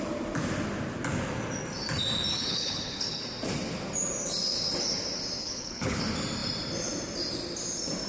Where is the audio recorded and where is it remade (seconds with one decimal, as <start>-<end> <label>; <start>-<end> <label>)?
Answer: 0.0-2.3 recorded; 2.3-3.2 remade; 3.2-5.4 recorded; 5.4-6.0 remade; 6.0-8.1 recorded